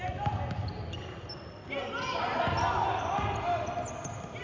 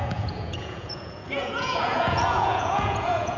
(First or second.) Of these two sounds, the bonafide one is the first